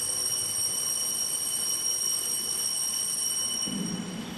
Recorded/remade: recorded